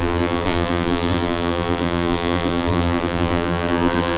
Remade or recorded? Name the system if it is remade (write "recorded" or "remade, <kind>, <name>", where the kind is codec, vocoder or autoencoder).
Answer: remade, vocoder, BigVGAN v2